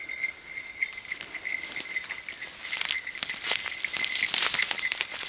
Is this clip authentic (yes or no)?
yes